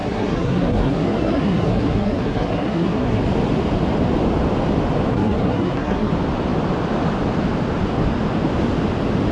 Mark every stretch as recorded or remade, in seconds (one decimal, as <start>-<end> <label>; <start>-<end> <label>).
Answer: 0.0-3.2 remade; 3.2-5.1 recorded; 5.1-6.1 remade; 6.1-9.3 recorded

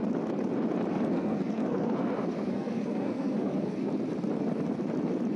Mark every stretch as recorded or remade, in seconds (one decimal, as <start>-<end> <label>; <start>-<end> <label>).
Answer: 0.0-0.9 recorded; 0.9-3.8 remade; 3.8-5.4 recorded

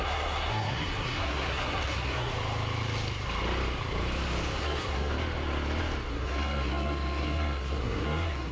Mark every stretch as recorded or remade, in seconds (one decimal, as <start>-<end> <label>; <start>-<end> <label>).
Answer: 0.0-2.3 remade; 2.3-4.6 recorded; 4.6-5.1 remade; 5.1-6.1 recorded; 6.1-8.5 remade